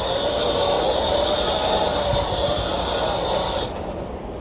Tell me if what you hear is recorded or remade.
recorded